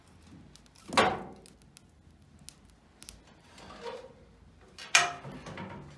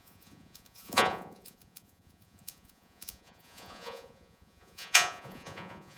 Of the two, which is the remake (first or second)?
second